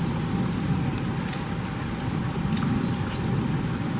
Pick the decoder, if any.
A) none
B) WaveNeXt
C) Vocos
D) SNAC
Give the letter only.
A